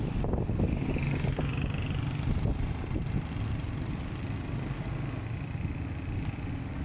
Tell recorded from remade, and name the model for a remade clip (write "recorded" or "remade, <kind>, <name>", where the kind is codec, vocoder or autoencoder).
recorded